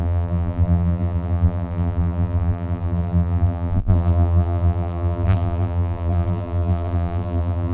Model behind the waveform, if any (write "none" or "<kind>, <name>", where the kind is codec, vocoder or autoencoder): vocoder, BigVGAN v2